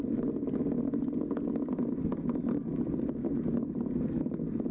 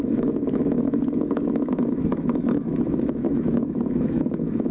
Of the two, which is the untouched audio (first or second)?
first